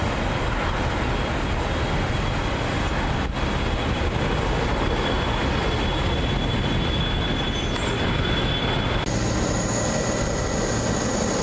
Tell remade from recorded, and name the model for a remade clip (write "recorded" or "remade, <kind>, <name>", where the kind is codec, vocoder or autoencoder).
recorded